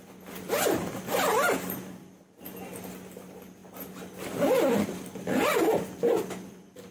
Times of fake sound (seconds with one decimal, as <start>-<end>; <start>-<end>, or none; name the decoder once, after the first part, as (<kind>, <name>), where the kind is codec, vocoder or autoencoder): 1.3-2.9 (vocoder, BigVGAN v2); 3.6-6.0